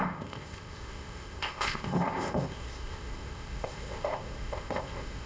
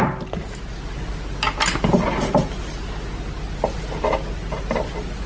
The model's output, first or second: first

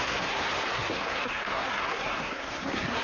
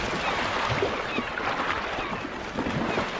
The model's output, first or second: first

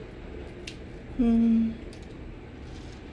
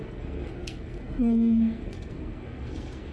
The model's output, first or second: second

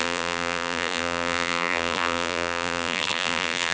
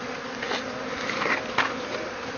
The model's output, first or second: first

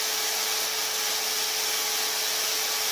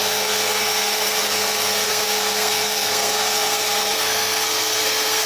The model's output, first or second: second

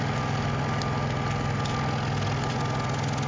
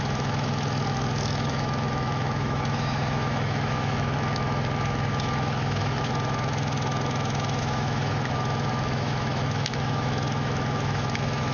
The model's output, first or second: second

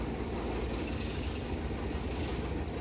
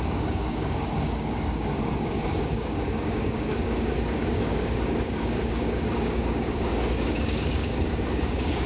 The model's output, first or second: second